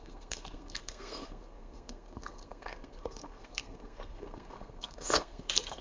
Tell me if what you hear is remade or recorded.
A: remade